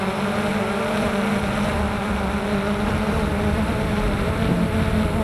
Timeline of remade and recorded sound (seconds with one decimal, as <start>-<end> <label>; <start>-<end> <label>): 0.0-5.2 recorded